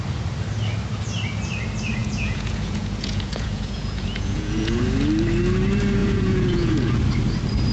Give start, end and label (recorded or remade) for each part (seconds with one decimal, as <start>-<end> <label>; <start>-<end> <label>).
0.0-2.0 recorded; 2.0-4.8 remade; 4.8-6.0 recorded; 6.0-7.0 remade; 7.0-7.7 recorded